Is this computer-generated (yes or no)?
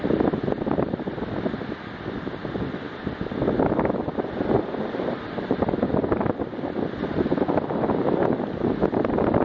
no